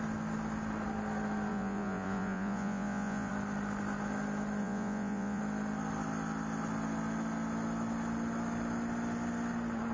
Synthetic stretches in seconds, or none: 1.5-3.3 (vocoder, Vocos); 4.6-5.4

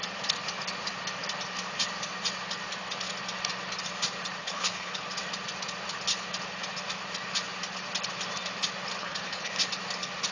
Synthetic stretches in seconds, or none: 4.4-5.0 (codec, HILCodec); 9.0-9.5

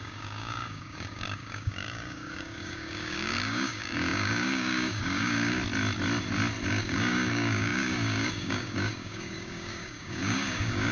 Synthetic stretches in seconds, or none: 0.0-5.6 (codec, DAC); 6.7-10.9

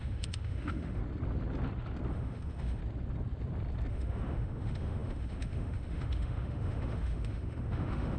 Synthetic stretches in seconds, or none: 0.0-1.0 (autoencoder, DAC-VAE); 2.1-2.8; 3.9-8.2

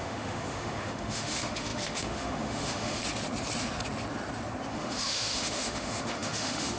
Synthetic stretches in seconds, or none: 0.0-3.0 (autoencoder, DAC-VAE); 4.7-6.8

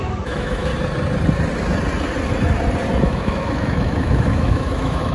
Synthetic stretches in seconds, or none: 0.0-0.7 (autoencoder, DAC-VAE); 3.0-5.1